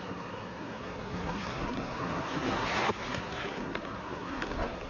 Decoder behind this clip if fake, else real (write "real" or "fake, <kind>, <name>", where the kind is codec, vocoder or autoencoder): fake, codec, SNAC